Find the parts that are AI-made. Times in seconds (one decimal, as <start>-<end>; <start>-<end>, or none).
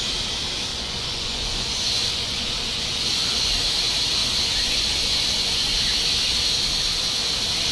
0.7-3.5; 4.2-5.7